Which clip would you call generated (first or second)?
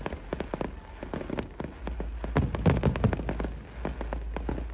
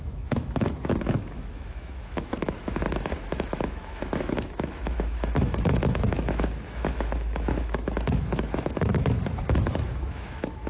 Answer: second